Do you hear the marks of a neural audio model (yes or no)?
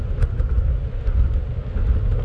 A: no